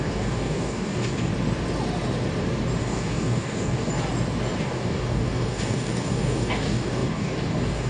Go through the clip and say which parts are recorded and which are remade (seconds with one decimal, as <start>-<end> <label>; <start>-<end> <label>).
0.0-1.3 remade; 1.3-2.8 recorded; 2.8-3.9 remade; 3.9-4.6 recorded; 4.6-7.9 remade